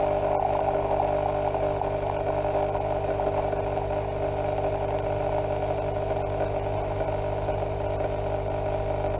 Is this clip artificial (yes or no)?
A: no